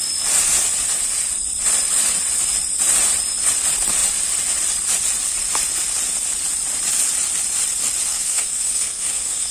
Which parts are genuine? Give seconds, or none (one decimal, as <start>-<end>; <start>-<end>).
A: 0.0-8.1